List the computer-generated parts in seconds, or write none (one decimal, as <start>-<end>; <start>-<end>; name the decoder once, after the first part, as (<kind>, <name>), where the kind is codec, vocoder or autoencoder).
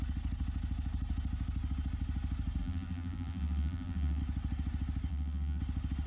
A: 2.6-4.2 (vocoder, BigVGAN v2); 5.1-5.6